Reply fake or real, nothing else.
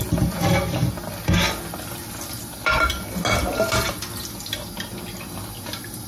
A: real